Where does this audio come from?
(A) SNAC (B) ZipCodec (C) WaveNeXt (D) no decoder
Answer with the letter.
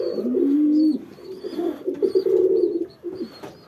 D